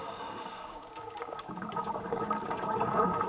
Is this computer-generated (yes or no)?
yes